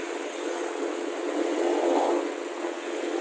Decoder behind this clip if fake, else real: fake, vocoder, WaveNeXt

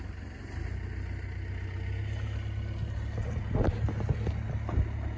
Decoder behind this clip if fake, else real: real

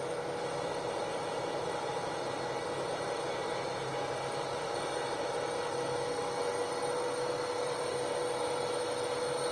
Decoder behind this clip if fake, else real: real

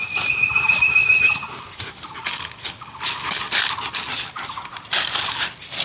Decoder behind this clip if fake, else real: real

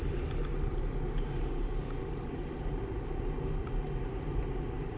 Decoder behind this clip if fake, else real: real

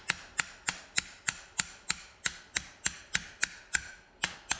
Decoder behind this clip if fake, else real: real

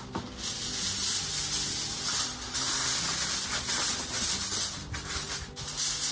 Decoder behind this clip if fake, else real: real